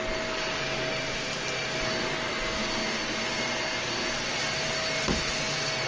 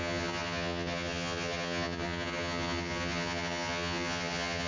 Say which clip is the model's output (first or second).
second